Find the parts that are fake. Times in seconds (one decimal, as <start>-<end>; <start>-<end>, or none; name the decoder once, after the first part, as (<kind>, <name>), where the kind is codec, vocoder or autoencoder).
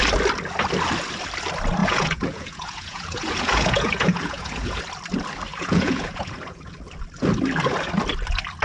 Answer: 1.8-4.8 (vocoder, Vocos); 5.5-6.7